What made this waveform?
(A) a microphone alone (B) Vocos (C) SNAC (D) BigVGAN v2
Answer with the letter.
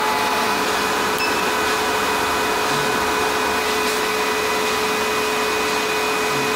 A